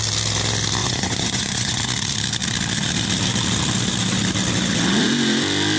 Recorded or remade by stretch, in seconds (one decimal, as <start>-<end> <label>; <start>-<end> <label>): 0.0-0.8 recorded; 0.8-1.8 remade; 1.8-5.8 recorded